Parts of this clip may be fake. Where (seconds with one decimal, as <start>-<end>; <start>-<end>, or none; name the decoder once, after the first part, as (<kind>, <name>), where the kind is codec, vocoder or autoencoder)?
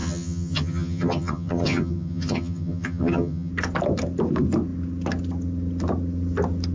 0.0-3.5 (vocoder, HiFi-GAN)